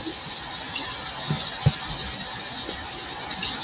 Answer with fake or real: real